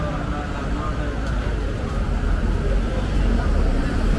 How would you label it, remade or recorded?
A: recorded